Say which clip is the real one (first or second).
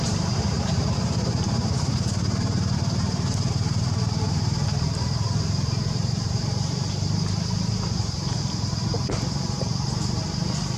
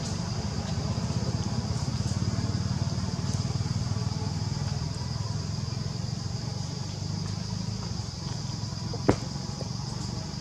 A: second